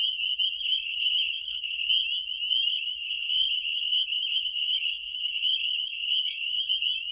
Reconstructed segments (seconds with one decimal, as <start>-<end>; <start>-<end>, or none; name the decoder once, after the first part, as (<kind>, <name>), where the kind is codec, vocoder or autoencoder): 0.6-1.9 (codec, HILCodec); 2.7-6.6